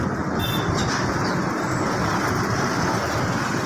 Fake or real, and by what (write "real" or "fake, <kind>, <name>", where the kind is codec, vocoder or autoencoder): real